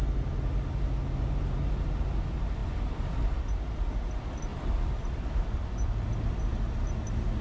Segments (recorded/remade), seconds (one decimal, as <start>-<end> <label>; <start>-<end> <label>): 0.0-2.6 recorded; 2.6-3.4 remade; 3.4-4.5 recorded; 4.5-6.4 remade; 6.4-7.4 recorded